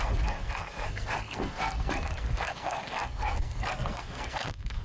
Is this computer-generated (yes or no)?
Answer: yes